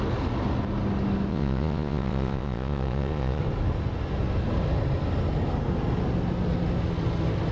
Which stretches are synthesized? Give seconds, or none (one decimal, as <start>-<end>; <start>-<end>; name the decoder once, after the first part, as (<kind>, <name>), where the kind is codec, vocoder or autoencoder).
1.3-3.4 (vocoder, Vocos)

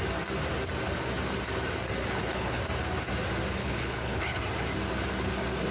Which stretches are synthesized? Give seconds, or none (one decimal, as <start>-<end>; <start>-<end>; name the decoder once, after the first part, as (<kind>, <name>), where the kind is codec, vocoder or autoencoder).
2.0-2.6 (codec, HILCodec); 3.6-4.4

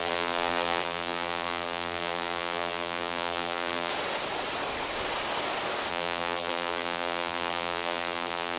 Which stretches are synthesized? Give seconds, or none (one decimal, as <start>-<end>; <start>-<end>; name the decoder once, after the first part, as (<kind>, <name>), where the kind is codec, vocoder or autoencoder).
0.0-3.9 (vocoder, BigVGAN v2); 5.9-8.6

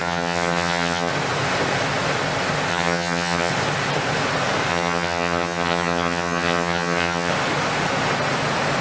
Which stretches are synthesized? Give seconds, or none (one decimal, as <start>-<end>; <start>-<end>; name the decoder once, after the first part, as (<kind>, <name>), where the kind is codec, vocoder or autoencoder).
0.0-1.1 (vocoder, HiFi-GAN); 2.7-3.5; 4.7-7.3

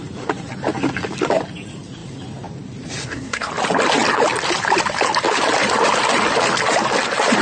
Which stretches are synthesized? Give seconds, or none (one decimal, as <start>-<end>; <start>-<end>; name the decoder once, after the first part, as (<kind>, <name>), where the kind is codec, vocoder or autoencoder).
3.0-3.5 (codec, SNAC)

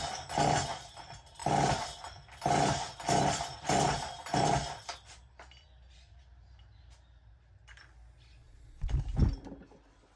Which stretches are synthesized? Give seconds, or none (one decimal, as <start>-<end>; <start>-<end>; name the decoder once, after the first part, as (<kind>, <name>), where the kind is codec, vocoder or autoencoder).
8.4-8.9 (vocoder, Vocos)

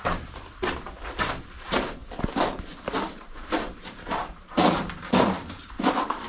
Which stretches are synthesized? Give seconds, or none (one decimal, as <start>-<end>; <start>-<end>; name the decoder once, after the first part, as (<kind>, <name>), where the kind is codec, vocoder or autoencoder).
0.0-2.0 (vocoder, BigVGAN v2); 3.0-6.3

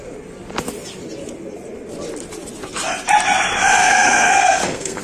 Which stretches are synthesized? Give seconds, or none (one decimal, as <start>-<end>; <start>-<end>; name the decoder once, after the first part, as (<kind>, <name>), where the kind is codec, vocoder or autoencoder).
3.8-5.0 (codec, SNAC)